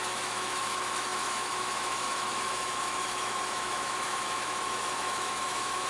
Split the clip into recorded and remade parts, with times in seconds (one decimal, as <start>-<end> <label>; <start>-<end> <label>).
0.0-5.9 remade